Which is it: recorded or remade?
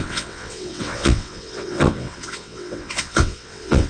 remade